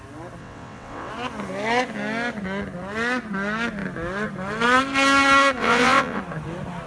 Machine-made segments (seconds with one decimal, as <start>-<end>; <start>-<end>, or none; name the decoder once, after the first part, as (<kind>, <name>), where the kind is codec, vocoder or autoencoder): 0.4-1.1 (vocoder, WaveNeXt); 5.6-6.2